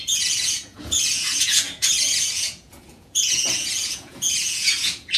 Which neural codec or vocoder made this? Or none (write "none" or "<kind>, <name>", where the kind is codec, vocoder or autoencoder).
vocoder, Vocos